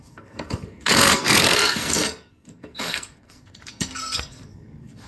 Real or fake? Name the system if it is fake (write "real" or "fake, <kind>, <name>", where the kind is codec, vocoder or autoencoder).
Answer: fake, codec, SNAC